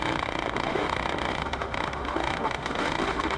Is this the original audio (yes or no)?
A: no